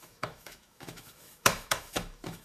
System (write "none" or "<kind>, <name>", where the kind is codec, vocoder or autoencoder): autoencoder, DAC-VAE